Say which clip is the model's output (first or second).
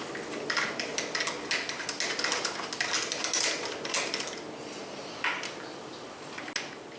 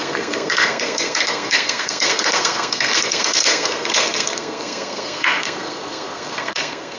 second